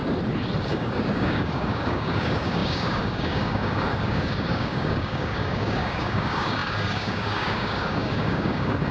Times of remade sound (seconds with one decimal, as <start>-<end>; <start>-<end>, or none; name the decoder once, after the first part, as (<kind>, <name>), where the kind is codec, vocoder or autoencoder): 0.6-8.9 (codec, DAC)